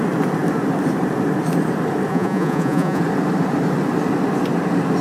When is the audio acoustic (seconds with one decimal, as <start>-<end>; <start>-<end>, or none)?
0.0-2.1; 3.0-5.0